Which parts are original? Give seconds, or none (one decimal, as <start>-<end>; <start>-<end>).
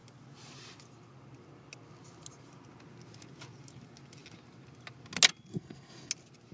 0.0-5.5; 6.1-6.5